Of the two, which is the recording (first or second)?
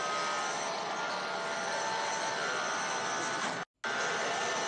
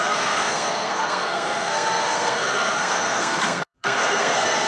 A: first